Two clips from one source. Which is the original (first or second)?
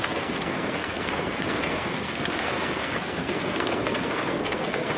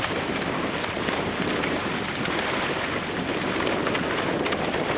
second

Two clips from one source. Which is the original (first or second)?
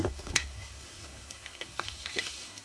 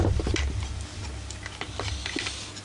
second